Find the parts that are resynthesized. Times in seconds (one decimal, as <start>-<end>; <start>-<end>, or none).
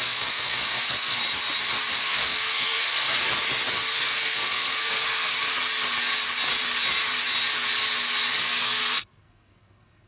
0.0-1.2; 2.0-3.2; 3.9-5.3; 8.3-10.1